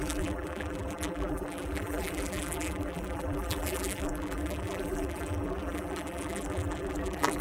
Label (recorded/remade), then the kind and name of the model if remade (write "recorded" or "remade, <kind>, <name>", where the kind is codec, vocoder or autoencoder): remade, vocoder, BigVGAN v2